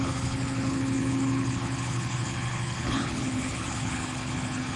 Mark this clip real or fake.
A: fake